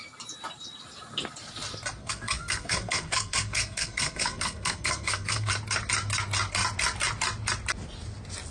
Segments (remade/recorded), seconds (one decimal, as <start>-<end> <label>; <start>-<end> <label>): 0.0-2.0 recorded; 2.0-5.5 remade; 5.5-8.5 recorded